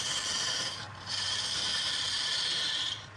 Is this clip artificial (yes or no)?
yes